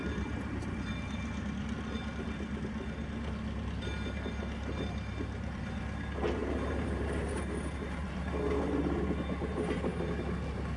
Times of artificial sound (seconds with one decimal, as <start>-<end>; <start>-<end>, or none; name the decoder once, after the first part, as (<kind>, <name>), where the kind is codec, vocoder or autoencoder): 0.0-0.9 (vocoder, BigVGAN v2); 6.4-7.5